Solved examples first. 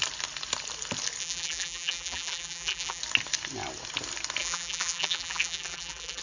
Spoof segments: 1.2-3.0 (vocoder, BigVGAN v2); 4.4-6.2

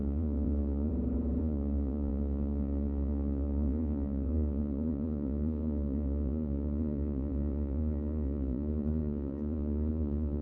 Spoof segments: 0.0-0.9 (vocoder, Vocos); 1.4-10.4